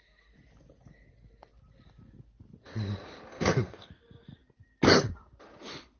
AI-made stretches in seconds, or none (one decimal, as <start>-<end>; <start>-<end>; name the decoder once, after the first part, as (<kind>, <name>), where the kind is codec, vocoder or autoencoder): 3.3-3.9 (codec, SNAC)